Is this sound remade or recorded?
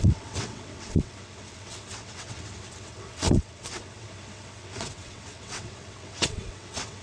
remade